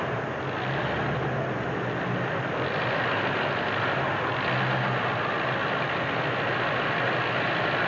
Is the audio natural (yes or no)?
yes